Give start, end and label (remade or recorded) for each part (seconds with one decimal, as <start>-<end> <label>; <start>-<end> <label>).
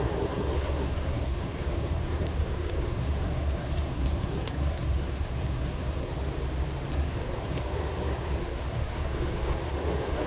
0.0-6.1 remade; 6.1-6.9 recorded; 6.9-10.3 remade